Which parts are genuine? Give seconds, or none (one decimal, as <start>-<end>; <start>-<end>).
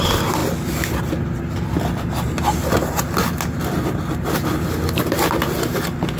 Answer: 0.0-6.2